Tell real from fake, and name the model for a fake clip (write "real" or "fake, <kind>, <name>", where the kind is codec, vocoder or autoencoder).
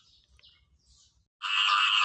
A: real